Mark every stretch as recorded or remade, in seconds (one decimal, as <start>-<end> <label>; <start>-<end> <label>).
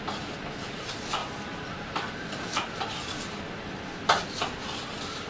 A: 0.0-1.2 recorded; 1.2-3.4 remade; 3.4-5.3 recorded